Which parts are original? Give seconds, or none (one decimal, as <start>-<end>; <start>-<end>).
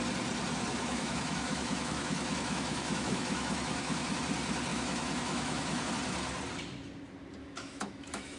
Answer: 0.0-0.7; 4.2-4.7; 5.9-7.4